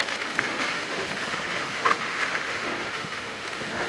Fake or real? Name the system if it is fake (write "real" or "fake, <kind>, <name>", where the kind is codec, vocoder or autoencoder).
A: fake, autoencoder, DAC-VAE